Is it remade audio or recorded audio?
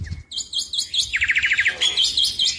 recorded